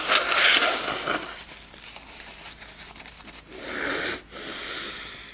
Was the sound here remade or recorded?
recorded